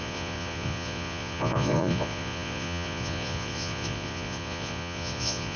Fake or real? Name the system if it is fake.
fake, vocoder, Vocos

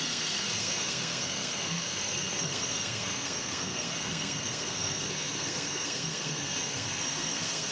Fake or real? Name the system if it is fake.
fake, codec, SNAC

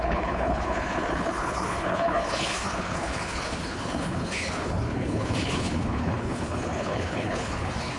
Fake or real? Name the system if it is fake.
fake, codec, HILCodec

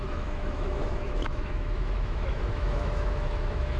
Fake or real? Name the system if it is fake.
fake, autoencoder, DAC-VAE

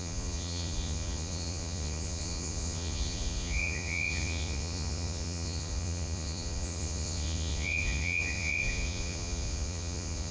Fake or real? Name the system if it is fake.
fake, vocoder, Vocos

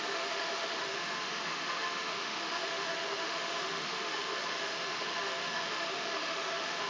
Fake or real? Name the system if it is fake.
fake, autoencoder, DAC-VAE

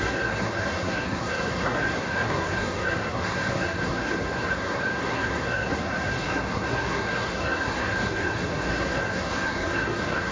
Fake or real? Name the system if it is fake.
fake, codec, SNAC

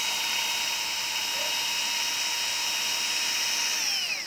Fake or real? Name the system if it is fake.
real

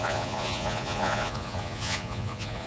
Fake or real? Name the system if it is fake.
fake, vocoder, Vocos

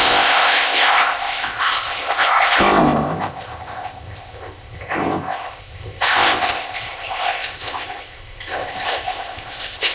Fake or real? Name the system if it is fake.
fake, codec, ZipCodec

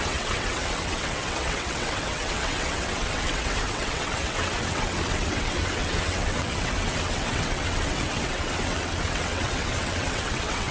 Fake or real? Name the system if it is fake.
fake, vocoder, WaveNeXt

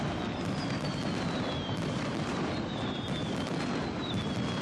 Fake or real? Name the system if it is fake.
real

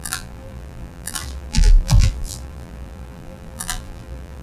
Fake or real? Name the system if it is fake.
fake, vocoder, BigVGAN v2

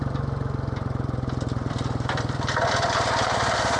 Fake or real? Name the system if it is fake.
fake, vocoder, BigVGAN v2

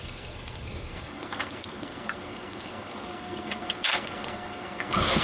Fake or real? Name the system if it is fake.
fake, codec, SNAC